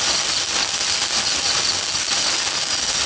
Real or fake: real